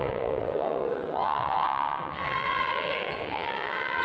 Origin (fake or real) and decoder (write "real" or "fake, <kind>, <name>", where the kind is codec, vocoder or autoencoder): fake, vocoder, WaveNeXt